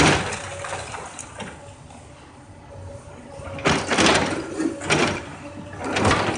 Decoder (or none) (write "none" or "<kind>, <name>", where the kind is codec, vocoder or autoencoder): none